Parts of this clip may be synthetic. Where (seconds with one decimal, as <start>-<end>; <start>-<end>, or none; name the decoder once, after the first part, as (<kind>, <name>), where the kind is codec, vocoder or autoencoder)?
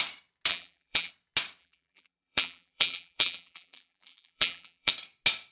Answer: 0.5-1.1 (vocoder, BigVGAN v2); 1.6-4.9